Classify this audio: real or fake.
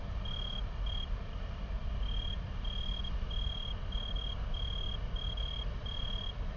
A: real